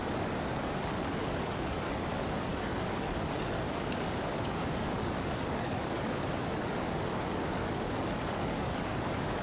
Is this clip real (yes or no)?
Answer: no